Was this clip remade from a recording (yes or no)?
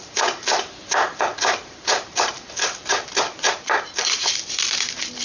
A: yes